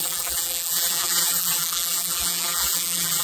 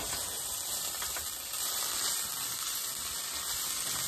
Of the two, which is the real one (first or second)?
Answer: second